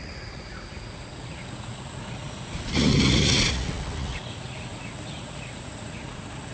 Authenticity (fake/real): fake